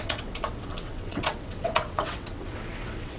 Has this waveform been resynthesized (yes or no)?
yes